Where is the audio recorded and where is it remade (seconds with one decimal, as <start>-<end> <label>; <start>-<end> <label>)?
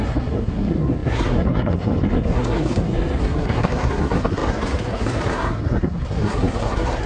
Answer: 0.0-7.1 remade